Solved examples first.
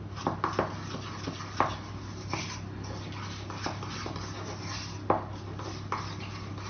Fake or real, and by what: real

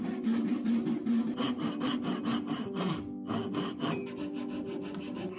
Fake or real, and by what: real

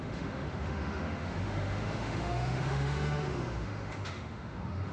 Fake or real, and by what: fake, autoencoder, DAC-VAE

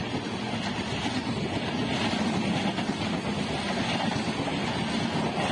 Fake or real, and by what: real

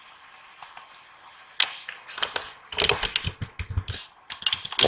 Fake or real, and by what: real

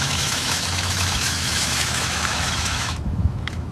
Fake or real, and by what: fake, autoencoder, DAC-VAE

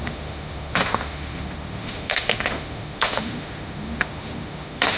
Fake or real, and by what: fake, autoencoder, DAC-VAE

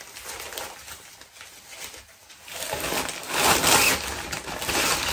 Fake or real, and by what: real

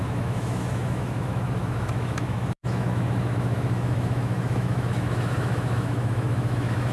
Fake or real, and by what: fake, autoencoder, DAC-VAE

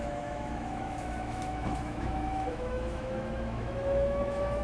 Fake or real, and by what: fake, autoencoder, DAC-VAE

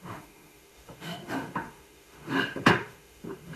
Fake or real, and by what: fake, autoencoder, DAC-VAE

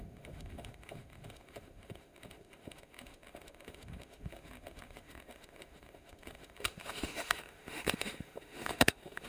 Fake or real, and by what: fake, autoencoder, DAC-VAE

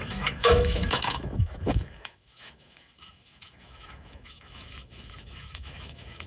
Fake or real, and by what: fake, autoencoder, DAC-VAE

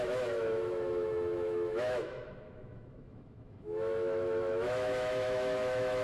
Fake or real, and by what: fake, autoencoder, DAC-VAE